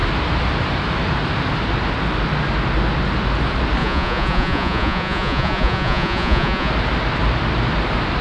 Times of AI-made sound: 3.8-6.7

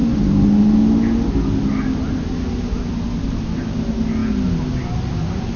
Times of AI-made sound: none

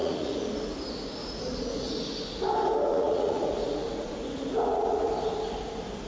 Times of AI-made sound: 0.0-0.5; 1.2-1.9; 2.9-5.1